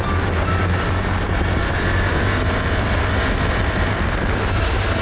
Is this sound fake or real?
real